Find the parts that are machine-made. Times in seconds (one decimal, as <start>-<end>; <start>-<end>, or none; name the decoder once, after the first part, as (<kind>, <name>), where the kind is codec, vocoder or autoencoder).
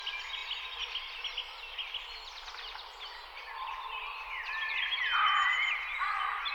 none